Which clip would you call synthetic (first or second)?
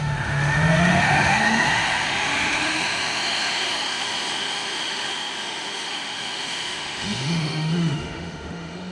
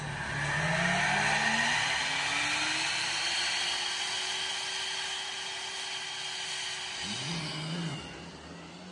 first